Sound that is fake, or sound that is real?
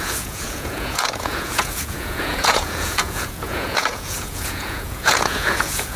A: fake